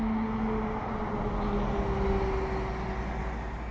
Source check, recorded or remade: recorded